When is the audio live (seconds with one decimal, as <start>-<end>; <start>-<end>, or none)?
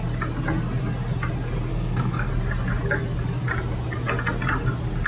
0.0-1.7; 2.3-5.1